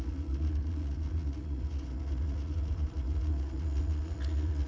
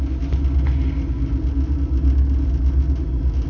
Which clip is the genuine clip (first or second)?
second